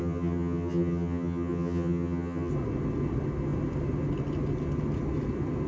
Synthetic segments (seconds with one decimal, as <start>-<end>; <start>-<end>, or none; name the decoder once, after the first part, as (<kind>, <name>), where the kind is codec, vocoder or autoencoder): 0.0-2.5 (vocoder, HiFi-GAN)